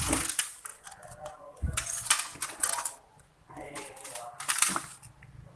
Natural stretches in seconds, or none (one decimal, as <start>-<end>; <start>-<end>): 0.0-0.7; 4.1-5.6